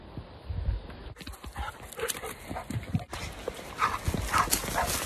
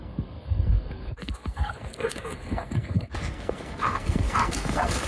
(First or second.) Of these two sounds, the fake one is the second